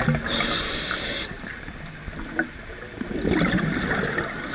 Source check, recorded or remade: recorded